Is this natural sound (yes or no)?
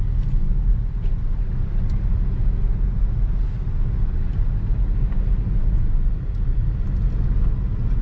yes